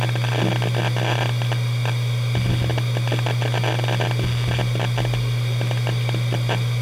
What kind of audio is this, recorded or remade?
recorded